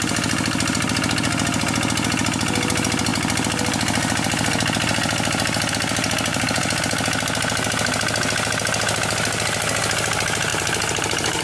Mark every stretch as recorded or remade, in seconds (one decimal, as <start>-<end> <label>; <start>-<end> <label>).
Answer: 0.0-6.3 recorded; 6.3-6.8 remade; 6.8-10.5 recorded; 10.5-11.4 remade